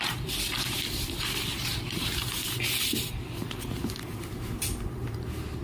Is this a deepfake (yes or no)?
no